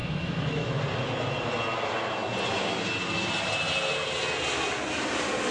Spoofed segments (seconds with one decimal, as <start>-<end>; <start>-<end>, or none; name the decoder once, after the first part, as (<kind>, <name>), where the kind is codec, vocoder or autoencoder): 0.0-0.8 (autoencoder, DAC-VAE)